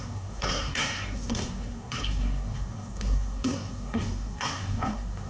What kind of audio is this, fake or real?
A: fake